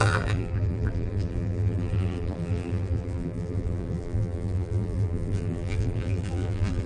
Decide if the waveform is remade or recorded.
remade